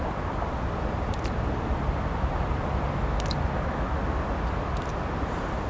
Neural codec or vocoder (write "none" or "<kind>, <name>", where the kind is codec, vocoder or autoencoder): none